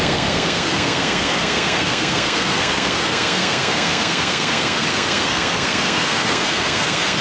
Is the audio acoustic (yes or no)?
no